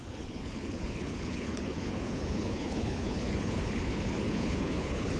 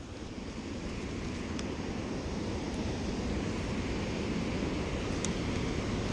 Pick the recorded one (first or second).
second